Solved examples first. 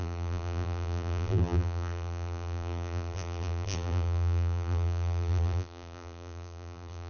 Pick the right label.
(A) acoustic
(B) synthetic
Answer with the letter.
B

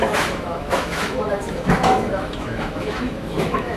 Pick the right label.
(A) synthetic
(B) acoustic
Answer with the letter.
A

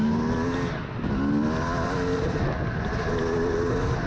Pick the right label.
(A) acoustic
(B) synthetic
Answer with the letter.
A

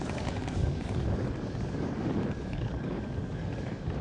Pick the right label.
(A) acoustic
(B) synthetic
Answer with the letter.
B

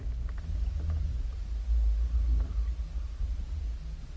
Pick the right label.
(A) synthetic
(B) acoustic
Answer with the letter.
B